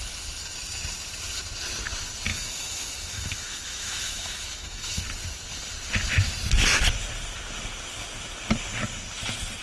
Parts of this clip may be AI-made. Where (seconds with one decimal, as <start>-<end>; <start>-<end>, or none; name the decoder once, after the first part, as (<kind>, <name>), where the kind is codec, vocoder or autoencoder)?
2.3-5.0 (autoencoder, DAC-VAE)